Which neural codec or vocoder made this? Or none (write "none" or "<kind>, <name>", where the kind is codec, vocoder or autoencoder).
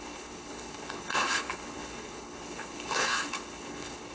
codec, HILCodec